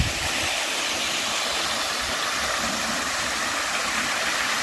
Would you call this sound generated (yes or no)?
yes